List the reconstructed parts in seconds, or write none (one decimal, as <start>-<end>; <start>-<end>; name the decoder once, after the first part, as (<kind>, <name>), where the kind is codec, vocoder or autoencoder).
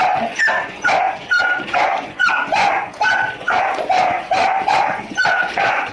0.6-5.9 (vocoder, Vocos)